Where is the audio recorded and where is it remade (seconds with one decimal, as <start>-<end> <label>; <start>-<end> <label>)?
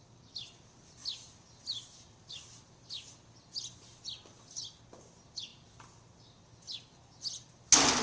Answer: 0.0-8.0 recorded